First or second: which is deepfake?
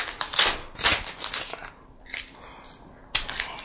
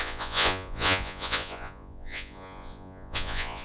second